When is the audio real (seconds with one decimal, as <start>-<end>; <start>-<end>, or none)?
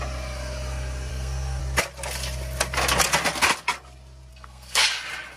0.0-1.1; 1.6-4.3; 4.9-5.4